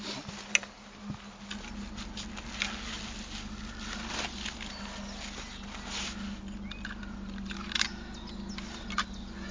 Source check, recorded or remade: recorded